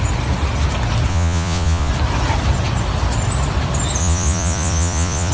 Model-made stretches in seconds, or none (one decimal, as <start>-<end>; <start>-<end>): 1.1-1.9; 4.0-5.3